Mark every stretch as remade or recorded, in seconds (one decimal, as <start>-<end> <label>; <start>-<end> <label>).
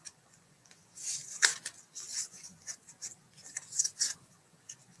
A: 0.0-1.5 remade; 1.5-2.2 recorded; 2.2-5.0 remade